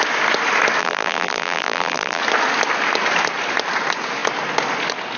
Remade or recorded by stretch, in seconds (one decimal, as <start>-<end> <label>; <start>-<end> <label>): 0.0-0.8 recorded; 0.8-2.2 remade; 2.2-5.2 recorded